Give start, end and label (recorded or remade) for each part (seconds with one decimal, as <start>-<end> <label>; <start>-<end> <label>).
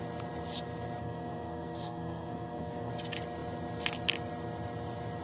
0.0-1.0 recorded; 1.0-2.9 remade; 2.9-5.2 recorded